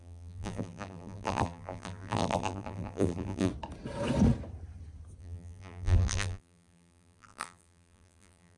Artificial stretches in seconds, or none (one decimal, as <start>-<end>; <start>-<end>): 0.0-3.5; 5.2-8.6